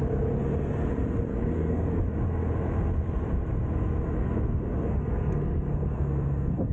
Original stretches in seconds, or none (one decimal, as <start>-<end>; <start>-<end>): 0.0-1.3; 2.0-4.2